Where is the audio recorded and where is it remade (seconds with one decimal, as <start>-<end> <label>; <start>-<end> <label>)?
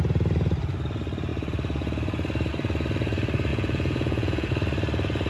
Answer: 0.0-3.5 recorded; 3.5-4.5 remade; 4.5-5.3 recorded